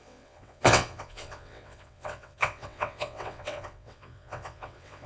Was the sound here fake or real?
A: fake